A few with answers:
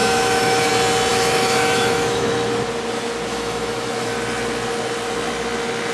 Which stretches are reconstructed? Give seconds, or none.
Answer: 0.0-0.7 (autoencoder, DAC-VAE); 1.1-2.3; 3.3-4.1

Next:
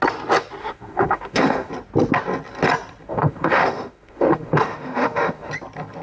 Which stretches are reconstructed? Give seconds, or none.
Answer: 0.6-1.7 (autoencoder, DAC-VAE); 3.1-5.5

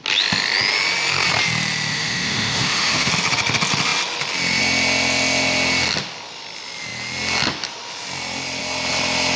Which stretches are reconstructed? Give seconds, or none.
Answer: 1.9-3.1 (autoencoder, DAC-VAE)